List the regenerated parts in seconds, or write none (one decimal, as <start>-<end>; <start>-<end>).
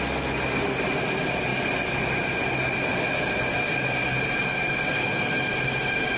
none